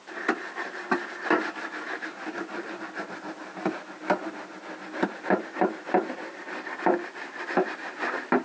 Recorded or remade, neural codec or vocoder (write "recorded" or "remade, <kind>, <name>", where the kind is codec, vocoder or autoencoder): recorded